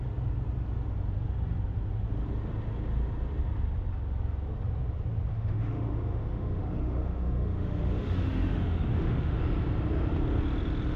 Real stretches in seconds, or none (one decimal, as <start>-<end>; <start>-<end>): 0.0-5.3; 9.4-11.0